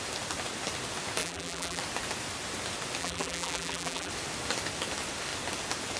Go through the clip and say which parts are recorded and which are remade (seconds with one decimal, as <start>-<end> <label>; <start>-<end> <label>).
0.0-1.2 recorded; 1.2-1.8 remade; 1.8-3.0 recorded; 3.0-4.1 remade; 4.1-6.0 recorded